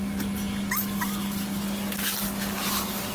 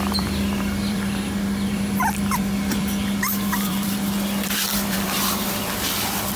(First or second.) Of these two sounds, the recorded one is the first